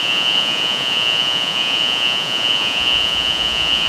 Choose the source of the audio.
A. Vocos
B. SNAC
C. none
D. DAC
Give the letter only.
A